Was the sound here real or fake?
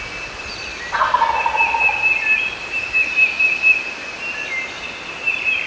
real